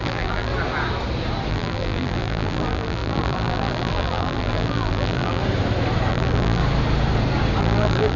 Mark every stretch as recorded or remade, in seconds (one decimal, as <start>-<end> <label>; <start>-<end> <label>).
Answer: 0.0-0.5 remade; 0.5-1.5 recorded; 1.5-5.4 remade; 5.4-6.1 recorded; 6.1-6.6 remade; 6.6-7.6 recorded; 7.6-8.2 remade